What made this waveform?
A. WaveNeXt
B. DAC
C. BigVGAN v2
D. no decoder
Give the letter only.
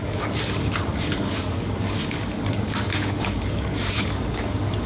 B